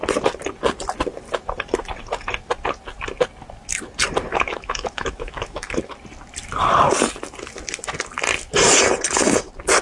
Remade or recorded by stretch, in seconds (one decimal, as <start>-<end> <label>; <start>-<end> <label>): 0.0-4.3 recorded; 4.3-5.9 remade; 5.9-9.8 recorded